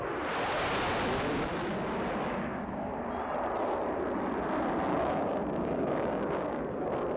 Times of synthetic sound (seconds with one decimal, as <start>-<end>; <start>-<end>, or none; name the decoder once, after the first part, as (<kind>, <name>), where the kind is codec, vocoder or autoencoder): 4.9-6.6 (codec, DAC)